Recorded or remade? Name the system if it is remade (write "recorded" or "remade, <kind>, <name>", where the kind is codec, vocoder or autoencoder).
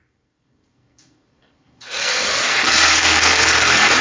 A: remade, codec, SNAC